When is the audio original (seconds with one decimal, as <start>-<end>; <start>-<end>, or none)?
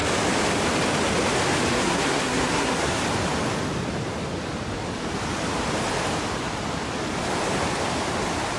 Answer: 0.0-1.7; 3.0-8.6